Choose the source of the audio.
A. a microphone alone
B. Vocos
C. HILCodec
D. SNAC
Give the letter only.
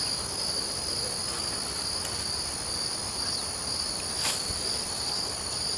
A